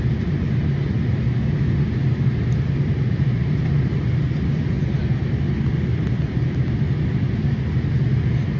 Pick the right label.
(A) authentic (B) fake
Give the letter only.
A